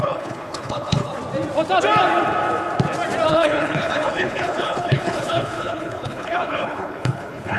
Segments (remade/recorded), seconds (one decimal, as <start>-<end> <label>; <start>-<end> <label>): 0.0-1.1 remade; 1.1-3.3 recorded; 3.3-7.6 remade